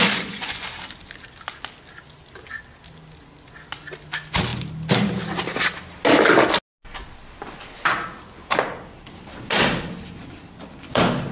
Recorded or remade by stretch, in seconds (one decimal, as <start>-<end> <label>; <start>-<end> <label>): 0.0-0.7 remade; 0.7-11.3 recorded